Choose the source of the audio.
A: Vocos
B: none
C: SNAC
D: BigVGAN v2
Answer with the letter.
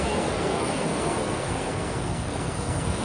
C